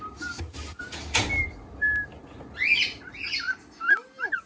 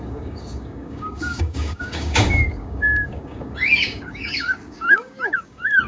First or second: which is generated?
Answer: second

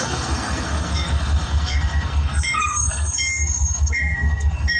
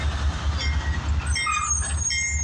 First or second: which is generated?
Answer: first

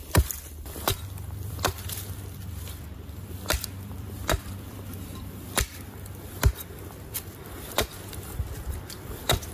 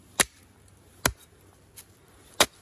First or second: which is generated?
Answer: first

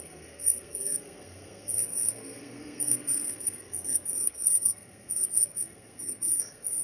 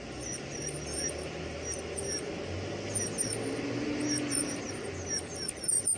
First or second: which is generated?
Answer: first